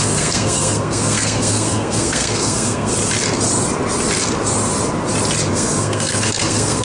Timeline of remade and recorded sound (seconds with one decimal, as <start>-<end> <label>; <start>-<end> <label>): 0.0-2.9 remade; 2.9-5.5 recorded; 5.5-6.8 remade